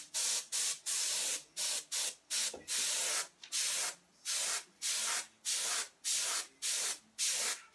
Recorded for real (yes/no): yes